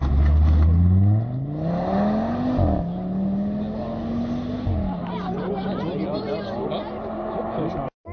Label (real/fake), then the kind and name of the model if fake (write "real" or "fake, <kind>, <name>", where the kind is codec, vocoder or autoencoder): real